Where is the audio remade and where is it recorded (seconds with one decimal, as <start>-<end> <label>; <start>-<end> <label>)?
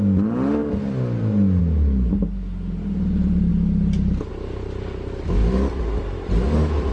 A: 0.0-6.9 recorded